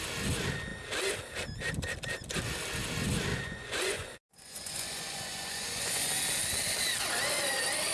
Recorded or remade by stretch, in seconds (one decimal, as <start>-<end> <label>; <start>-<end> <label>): 0.0-3.3 recorded; 3.3-6.1 remade; 6.1-7.9 recorded